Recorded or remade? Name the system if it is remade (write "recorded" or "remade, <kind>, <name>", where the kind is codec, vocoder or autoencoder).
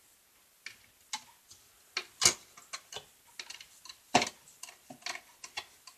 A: recorded